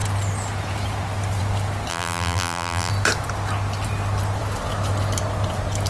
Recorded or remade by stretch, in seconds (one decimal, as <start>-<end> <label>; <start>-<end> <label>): 0.0-1.9 recorded; 1.9-2.9 remade; 2.9-5.9 recorded